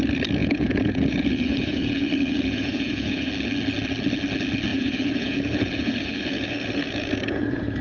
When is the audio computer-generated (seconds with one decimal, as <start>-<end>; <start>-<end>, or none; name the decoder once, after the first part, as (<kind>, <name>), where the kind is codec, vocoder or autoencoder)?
0.4-3.3 (vocoder, Vocos); 4.7-7.8